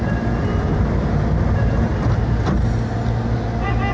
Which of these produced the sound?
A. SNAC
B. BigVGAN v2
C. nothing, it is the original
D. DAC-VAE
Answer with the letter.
C